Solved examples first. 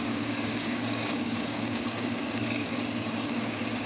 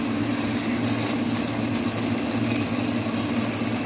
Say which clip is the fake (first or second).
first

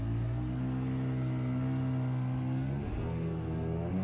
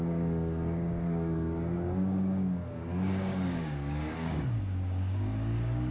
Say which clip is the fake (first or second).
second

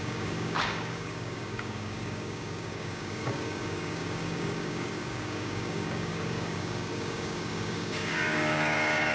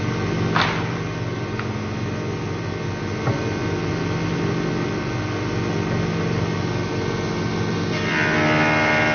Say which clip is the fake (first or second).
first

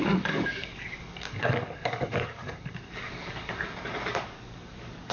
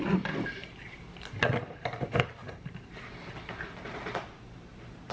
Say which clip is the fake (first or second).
first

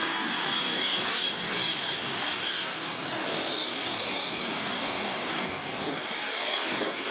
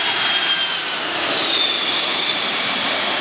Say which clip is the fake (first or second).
first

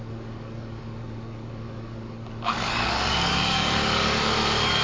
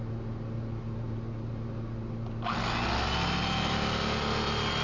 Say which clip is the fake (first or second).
first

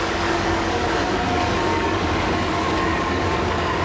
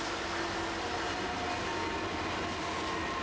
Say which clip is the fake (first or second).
first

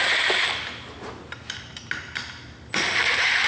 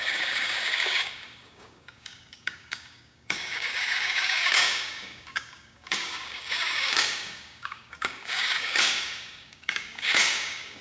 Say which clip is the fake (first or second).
second